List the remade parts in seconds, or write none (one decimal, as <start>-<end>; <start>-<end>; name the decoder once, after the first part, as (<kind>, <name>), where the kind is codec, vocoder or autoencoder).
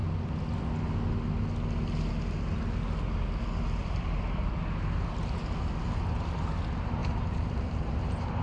3.8-4.5 (vocoder, BigVGAN v2); 7.0-8.4